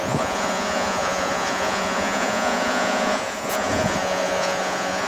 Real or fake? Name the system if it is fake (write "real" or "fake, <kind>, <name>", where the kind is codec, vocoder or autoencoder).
fake, vocoder, Vocos